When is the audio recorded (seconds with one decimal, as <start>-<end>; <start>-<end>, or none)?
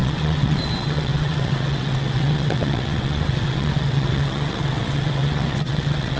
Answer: none